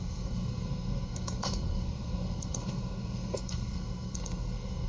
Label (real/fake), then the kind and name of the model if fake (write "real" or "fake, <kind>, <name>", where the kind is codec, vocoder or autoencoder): fake, codec, SNAC